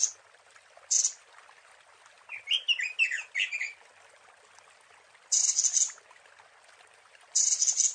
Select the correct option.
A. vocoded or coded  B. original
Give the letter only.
B